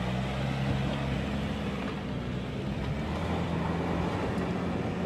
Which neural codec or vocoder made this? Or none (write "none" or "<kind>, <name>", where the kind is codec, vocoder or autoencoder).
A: none